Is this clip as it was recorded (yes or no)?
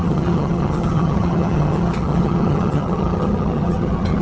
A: no